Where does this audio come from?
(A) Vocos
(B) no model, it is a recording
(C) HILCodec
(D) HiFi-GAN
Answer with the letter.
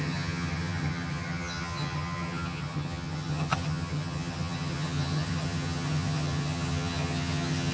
D